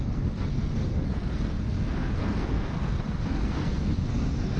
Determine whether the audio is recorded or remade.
remade